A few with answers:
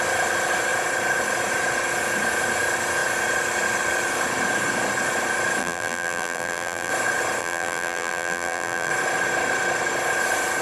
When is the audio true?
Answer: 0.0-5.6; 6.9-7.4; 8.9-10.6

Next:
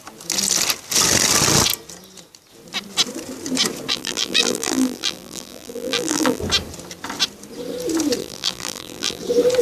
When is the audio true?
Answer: 0.0-3.9; 6.4-8.2; 9.2-9.6

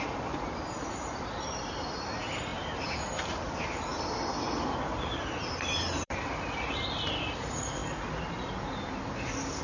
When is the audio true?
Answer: 0.0-2.5; 3.3-3.9; 6.8-9.6

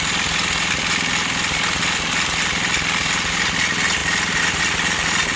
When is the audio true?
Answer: 0.0-5.4

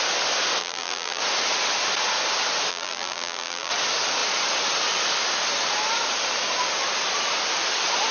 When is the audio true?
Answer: 0.0-0.6; 1.2-2.7; 3.7-8.1

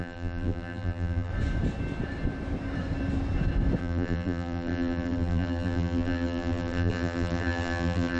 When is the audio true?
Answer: 1.3-3.8

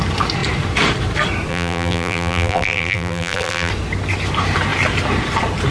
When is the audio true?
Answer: 0.0-1.5; 3.7-5.7